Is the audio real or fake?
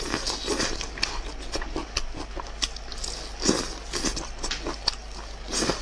real